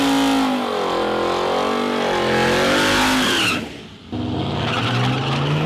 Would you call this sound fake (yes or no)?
no